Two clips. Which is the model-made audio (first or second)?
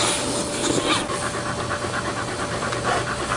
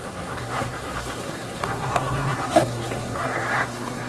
second